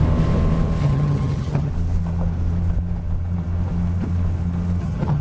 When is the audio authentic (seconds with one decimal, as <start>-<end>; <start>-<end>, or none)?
0.0-0.8; 1.7-4.8